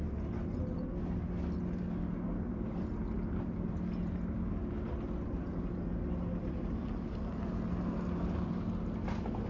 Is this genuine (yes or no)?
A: yes